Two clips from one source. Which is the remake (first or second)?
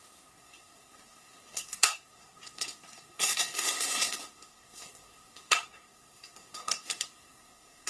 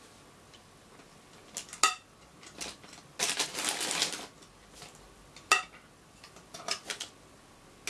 first